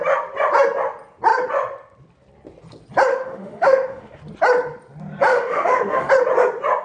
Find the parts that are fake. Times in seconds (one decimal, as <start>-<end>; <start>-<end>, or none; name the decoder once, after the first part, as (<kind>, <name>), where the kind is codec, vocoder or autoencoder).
3.1-4.2 (autoencoder, DAC-VAE); 5.3-6.1